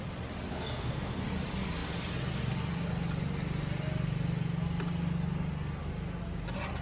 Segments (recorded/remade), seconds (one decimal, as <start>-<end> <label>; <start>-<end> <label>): 0.0-0.5 recorded; 0.5-1.2 remade; 1.2-6.8 recorded